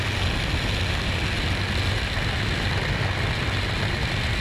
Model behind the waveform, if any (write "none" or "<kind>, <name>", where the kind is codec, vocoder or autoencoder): none